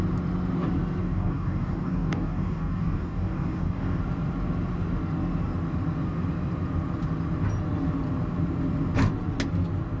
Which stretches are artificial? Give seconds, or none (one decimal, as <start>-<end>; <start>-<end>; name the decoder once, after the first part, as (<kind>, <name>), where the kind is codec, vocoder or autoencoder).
1.0-4.0 (codec, DAC)